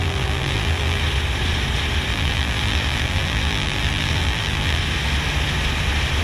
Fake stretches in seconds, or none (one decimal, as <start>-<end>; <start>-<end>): 0.0-1.0; 2.1-4.8